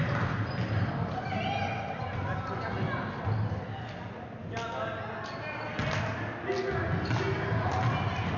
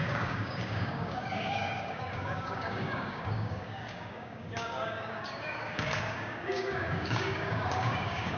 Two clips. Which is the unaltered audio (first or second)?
first